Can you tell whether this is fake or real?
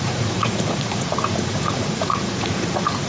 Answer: fake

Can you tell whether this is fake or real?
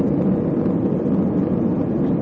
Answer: real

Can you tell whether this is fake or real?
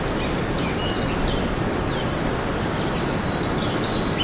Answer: real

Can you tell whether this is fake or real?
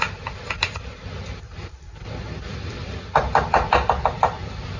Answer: fake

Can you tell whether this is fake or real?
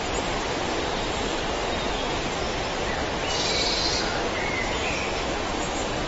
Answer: real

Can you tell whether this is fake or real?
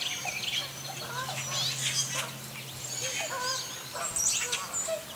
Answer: real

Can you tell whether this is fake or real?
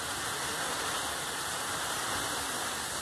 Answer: real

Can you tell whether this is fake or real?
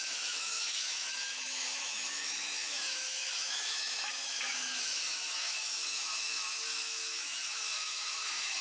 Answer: fake